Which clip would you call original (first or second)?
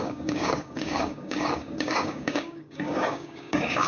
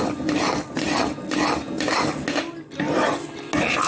second